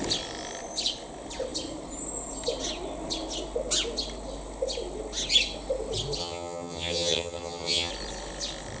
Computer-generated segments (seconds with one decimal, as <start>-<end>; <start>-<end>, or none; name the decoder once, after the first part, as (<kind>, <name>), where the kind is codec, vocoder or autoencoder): 6.2-7.9 (vocoder, HiFi-GAN)